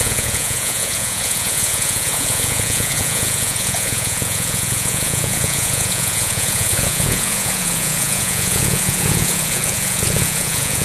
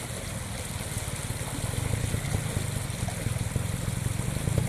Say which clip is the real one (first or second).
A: second